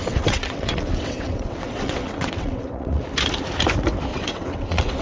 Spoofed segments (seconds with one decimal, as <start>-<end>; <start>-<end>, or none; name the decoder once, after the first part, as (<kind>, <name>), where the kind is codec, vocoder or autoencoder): 0.0-3.0 (vocoder, WaveNeXt); 4.1-5.0